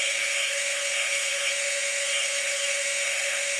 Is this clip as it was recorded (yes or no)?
no